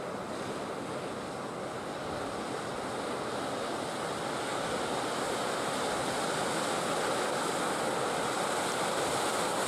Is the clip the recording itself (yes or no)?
yes